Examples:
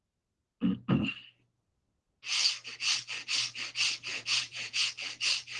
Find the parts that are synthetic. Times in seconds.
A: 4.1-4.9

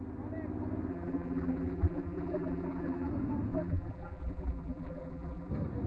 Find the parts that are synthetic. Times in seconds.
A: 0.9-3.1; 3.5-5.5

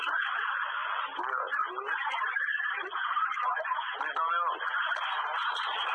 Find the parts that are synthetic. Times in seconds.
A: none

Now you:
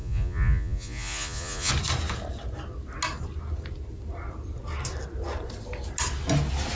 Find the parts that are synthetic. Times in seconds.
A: 0.0-1.7

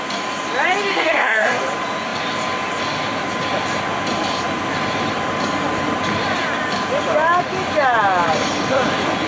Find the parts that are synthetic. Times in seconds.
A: 0.9-1.6

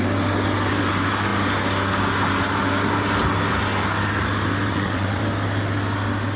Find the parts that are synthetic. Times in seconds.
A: 4.7-5.2